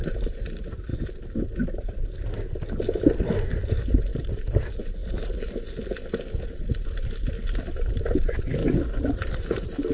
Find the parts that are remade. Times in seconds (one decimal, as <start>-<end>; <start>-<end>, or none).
0.0-0.9; 1.9-5.0; 7.9-8.6; 9.5-9.9